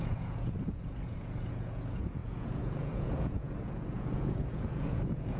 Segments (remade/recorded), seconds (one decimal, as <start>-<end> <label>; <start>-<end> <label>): 0.0-5.4 remade